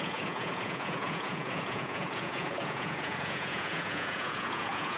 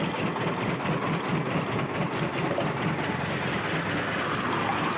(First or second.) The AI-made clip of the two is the first